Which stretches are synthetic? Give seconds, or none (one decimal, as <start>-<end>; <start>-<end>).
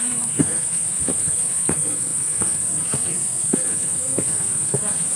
0.0-5.2